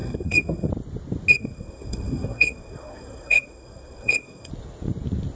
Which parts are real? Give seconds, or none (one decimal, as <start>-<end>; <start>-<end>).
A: 0.7-1.3; 4.5-5.4